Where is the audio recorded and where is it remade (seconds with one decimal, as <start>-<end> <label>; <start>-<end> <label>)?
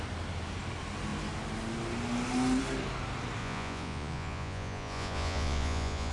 0.0-3.4 recorded; 3.4-6.1 remade